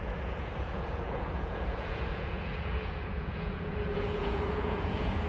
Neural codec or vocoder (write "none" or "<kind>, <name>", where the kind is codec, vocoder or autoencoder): vocoder, Vocos